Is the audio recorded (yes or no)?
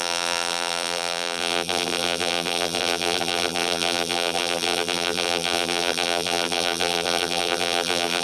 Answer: no